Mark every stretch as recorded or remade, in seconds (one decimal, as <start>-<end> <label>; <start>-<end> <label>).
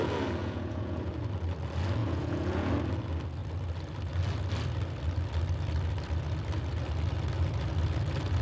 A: 0.0-0.4 recorded; 0.4-1.1 remade; 1.1-2.0 recorded; 2.0-2.7 remade; 2.7-8.4 recorded